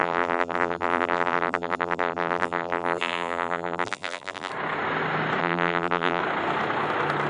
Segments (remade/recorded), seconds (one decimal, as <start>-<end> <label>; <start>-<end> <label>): 0.0-4.5 remade; 4.5-5.4 recorded; 5.4-6.2 remade; 6.2-7.3 recorded